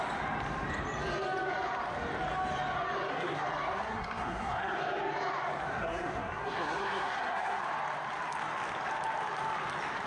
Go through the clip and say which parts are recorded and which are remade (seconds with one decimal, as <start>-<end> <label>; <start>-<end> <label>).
0.0-3.1 recorded; 3.1-4.8 remade; 4.8-5.7 recorded; 5.7-7.6 remade; 7.6-10.1 recorded